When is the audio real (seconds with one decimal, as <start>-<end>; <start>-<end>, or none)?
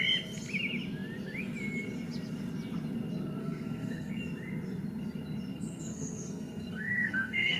0.0-3.4; 4.1-5.5